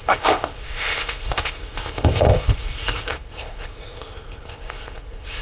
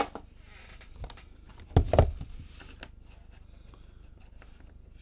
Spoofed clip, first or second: first